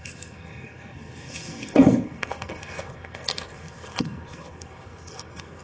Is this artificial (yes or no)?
yes